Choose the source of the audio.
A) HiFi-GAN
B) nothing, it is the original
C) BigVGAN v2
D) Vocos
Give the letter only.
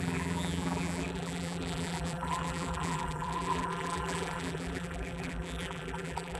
C